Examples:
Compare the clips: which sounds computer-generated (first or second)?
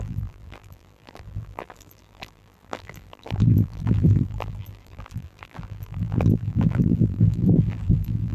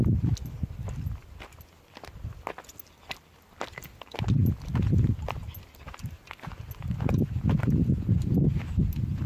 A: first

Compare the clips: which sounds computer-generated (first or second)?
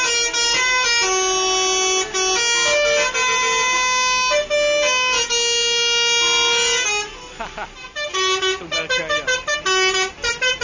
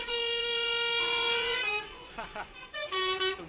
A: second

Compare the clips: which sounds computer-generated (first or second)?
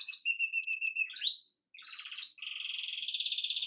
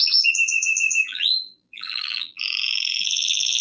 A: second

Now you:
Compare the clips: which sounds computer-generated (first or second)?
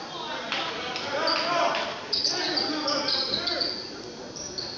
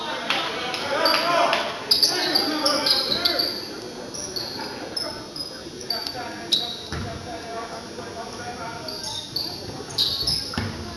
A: first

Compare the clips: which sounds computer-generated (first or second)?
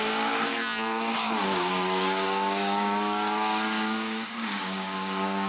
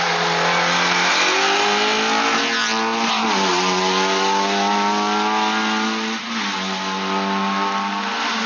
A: first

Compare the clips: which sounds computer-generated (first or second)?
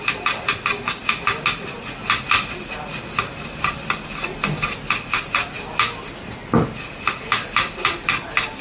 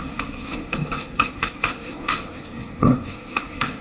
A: second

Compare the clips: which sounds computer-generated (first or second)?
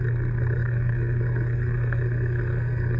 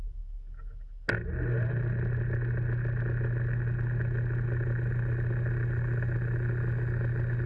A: first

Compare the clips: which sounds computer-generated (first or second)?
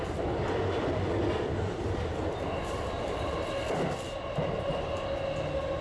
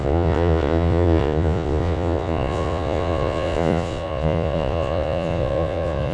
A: second